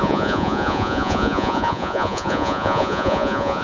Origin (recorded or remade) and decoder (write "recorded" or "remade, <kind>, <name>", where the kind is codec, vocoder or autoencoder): remade, vocoder, Vocos